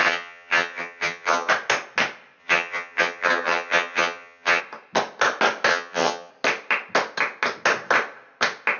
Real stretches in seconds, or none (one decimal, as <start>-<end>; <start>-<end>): 1.5-2.4; 4.6-5.7; 6.3-8.8